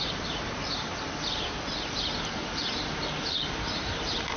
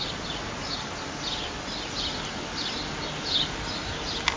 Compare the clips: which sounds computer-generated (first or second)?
first